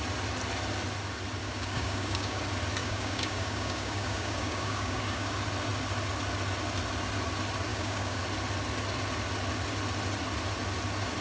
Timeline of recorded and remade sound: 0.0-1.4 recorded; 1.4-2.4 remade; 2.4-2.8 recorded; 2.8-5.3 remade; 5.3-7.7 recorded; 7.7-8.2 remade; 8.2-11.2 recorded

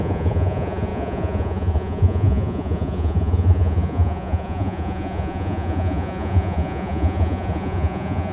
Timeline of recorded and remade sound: 0.0-8.3 remade